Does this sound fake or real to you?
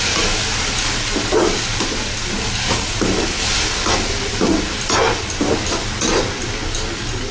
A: real